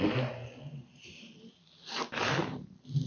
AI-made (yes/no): no